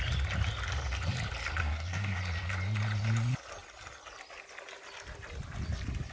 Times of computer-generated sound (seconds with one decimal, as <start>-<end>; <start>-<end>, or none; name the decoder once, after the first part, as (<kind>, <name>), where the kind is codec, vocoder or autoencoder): 1.6-2.2 (codec, SNAC)